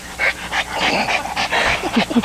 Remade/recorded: recorded